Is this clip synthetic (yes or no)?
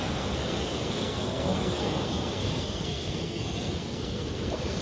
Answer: yes